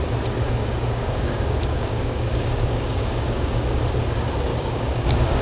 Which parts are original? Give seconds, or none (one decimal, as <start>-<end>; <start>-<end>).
0.0-0.6; 3.8-4.5